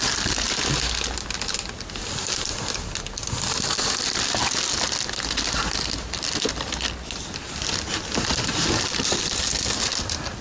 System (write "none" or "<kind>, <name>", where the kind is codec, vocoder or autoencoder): none